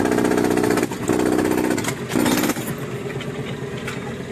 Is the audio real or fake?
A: real